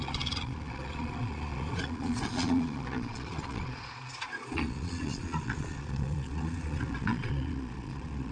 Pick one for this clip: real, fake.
fake